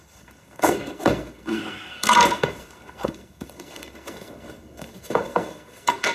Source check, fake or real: fake